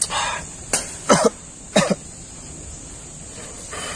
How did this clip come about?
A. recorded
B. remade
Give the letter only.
A